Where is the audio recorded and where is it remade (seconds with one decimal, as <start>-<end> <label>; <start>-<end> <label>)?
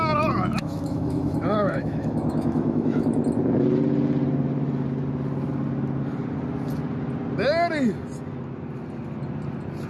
0.0-0.6 recorded; 0.6-3.2 remade; 3.2-9.9 recorded